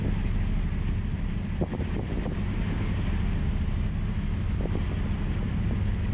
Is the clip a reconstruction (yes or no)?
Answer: no